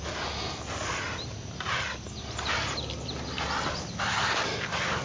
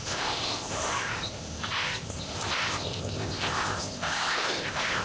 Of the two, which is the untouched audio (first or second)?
first